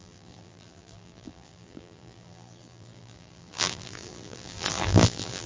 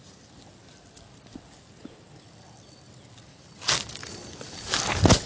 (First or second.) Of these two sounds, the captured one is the second